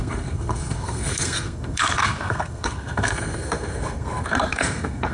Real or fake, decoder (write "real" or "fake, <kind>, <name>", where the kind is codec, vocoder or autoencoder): fake, codec, SNAC